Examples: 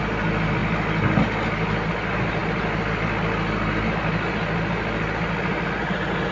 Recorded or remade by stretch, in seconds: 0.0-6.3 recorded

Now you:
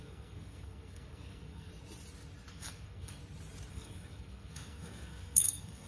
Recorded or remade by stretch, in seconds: 0.0-1.7 remade; 1.7-2.5 recorded; 2.5-3.2 remade; 3.2-3.7 recorded; 3.7-5.9 remade

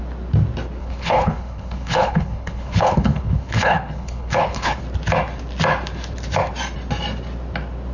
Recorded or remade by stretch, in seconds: 0.0-0.8 recorded; 0.8-4.8 remade; 4.8-7.9 recorded

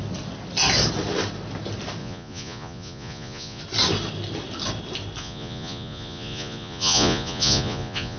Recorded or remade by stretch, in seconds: 0.0-2.0 recorded; 2.0-3.6 remade; 3.6-5.2 recorded; 5.2-8.2 remade

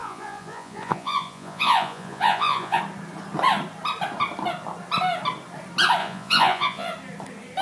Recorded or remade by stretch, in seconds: 0.0-2.8 remade; 2.8-6.0 recorded; 6.0-6.9 remade; 6.9-7.6 recorded

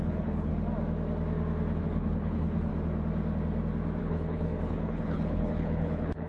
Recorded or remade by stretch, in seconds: 0.0-0.5 remade; 0.5-1.8 recorded; 1.8-2.7 remade; 2.7-4.0 recorded; 4.0-6.3 remade

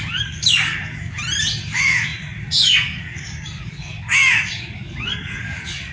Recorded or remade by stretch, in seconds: 0.0-1.2 remade; 1.2-1.7 recorded; 1.7-5.9 remade

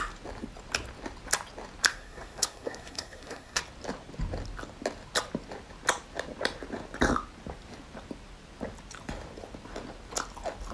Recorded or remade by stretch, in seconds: 0.0-1.9 recorded; 1.9-3.6 remade; 3.6-10.7 recorded